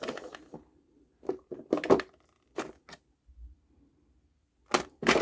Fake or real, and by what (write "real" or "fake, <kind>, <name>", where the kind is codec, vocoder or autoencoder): real